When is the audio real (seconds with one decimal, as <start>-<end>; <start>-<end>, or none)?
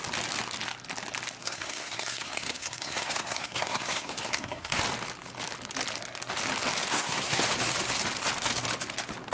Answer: 0.0-1.4; 4.8-6.9; 7.4-9.3